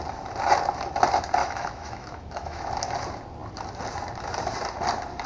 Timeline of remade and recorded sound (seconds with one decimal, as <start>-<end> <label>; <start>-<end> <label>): 0.0-1.4 recorded; 1.4-2.7 remade; 2.7-5.3 recorded